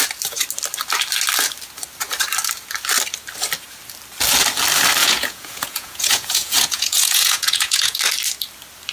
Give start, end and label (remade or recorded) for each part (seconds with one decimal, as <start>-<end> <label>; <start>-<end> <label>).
0.0-5.0 recorded; 5.0-8.0 remade; 8.0-8.9 recorded